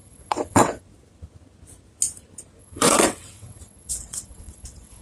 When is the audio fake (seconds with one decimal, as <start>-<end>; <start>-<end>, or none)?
0.0-0.8; 2.6-5.0